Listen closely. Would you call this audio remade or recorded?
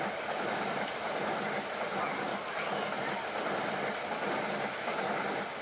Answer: recorded